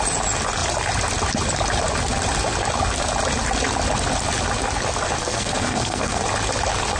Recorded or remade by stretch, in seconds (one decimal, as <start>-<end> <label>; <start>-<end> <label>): 0.0-5.2 recorded; 5.2-6.2 remade; 6.2-7.0 recorded